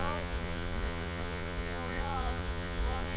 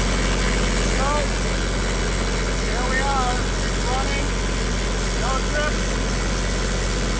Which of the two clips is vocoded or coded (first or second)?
first